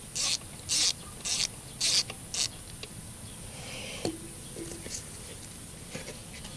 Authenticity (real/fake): real